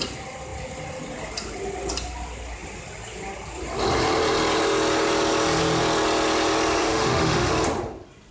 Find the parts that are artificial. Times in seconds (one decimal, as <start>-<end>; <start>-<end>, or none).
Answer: 6.8-7.5